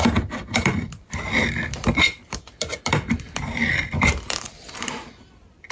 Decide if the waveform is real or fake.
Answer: fake